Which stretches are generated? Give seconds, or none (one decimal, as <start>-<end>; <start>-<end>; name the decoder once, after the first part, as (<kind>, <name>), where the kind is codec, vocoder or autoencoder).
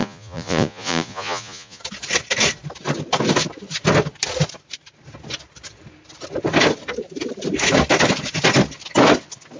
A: 0.0-1.8 (vocoder, Vocos)